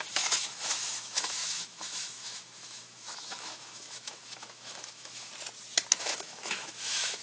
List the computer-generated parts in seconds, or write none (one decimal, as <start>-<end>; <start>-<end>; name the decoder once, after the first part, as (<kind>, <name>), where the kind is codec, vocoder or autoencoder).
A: 0.0-5.3 (autoencoder, DAC-VAE); 6.0-7.2